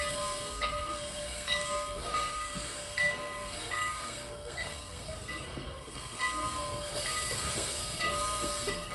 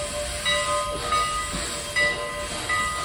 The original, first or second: second